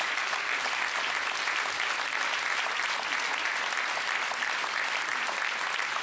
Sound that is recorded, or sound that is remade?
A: recorded